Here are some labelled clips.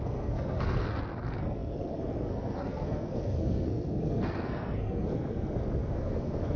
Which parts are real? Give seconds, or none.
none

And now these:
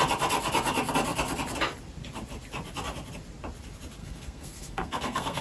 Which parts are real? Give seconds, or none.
0.0-4.0

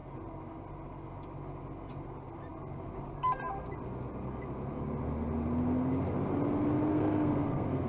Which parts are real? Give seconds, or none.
0.0-6.9

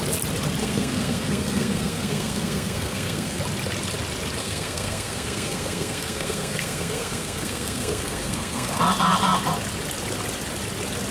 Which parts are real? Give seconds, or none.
0.0-0.6; 3.4-4.4; 8.8-11.1

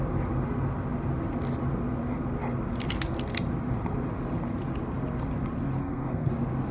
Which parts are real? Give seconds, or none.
0.0-5.8; 6.3-6.7